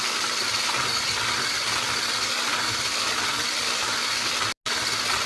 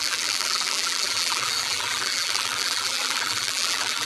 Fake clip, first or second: second